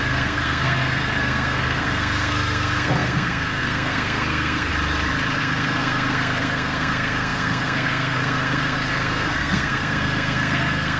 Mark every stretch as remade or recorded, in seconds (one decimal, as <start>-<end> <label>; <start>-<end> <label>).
0.0-4.7 remade; 4.7-5.4 recorded; 5.4-11.0 remade